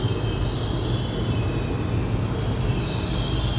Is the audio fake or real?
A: real